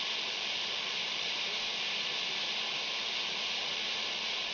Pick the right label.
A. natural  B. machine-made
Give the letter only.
A